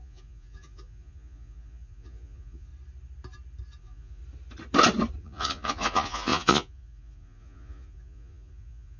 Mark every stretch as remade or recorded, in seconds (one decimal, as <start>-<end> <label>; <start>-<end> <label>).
0.0-2.7 remade; 2.7-3.8 recorded; 3.8-4.2 remade; 4.2-5.2 recorded; 5.2-9.0 remade